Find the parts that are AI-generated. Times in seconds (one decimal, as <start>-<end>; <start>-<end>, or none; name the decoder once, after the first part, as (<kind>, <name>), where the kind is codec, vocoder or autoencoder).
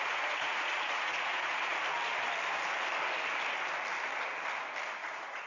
0.0-1.7 (vocoder, Vocos); 5.0-5.5